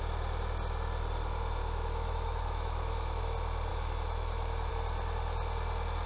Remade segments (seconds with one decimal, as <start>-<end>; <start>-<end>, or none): 1.6-3.2; 3.7-4.7